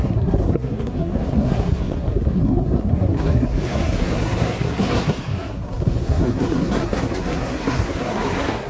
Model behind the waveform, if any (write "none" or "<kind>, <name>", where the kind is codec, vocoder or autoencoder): codec, SNAC